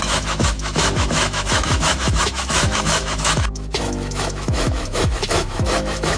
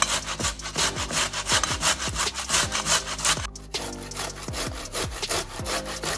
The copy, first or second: first